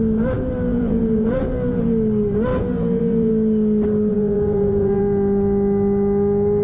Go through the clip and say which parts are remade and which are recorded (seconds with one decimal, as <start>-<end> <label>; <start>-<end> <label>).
0.0-0.7 recorded; 0.7-1.8 remade; 1.8-2.5 recorded; 2.5-3.3 remade; 3.3-4.1 recorded; 4.1-5.0 remade; 5.0-6.6 recorded